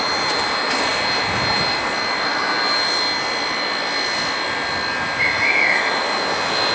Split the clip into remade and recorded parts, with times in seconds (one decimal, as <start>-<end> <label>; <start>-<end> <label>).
0.0-6.7 recorded